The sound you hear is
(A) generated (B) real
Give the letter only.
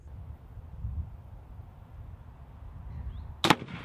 B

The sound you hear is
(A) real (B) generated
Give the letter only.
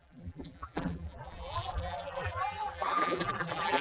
B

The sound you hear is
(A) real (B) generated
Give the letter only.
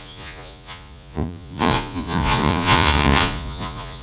B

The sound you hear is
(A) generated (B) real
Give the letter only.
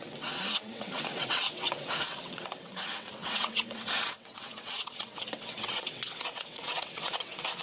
A